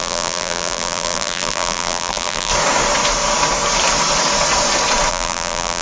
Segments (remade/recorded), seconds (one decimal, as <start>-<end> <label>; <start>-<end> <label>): 0.0-2.5 remade; 2.5-5.1 recorded; 5.1-5.8 remade